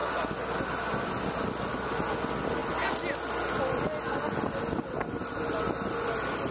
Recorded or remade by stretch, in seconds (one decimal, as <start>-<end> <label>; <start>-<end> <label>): 0.0-6.5 recorded